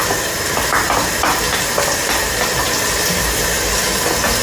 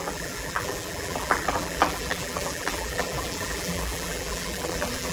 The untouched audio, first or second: first